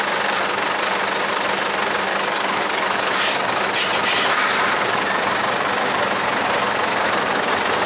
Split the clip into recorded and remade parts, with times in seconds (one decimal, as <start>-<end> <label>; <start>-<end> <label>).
0.0-2.1 recorded; 2.1-3.7 remade; 3.7-7.9 recorded

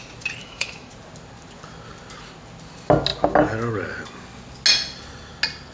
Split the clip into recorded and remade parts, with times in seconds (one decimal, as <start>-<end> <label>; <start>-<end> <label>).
0.0-0.4 recorded; 0.4-0.9 remade; 0.9-5.7 recorded

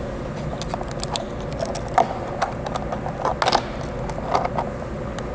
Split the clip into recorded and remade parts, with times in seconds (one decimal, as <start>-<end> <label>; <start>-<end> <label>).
0.0-5.3 recorded

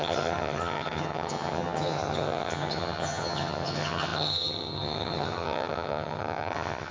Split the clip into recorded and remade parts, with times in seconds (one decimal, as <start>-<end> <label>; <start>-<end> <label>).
0.0-6.9 remade

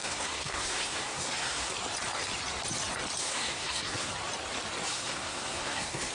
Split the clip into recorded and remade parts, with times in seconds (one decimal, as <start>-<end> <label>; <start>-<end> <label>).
0.0-1.7 remade; 1.7-3.2 recorded; 3.2-4.1 remade; 4.1-4.9 recorded; 4.9-6.1 remade

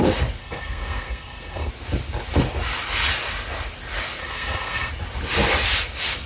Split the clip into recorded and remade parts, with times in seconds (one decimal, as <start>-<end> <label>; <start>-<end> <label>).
0.0-0.4 recorded; 0.4-1.7 remade; 1.7-4.2 recorded; 4.2-4.9 remade; 4.9-6.3 recorded

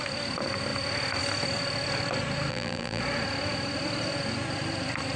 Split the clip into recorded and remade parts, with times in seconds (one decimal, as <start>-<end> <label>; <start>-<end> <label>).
0.0-2.5 recorded; 2.5-3.0 remade; 3.0-5.2 recorded

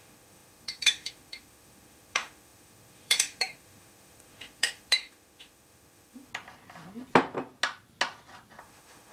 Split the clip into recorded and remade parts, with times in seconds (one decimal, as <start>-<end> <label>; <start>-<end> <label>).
0.0-6.3 remade; 6.3-8.6 recorded; 8.6-9.1 remade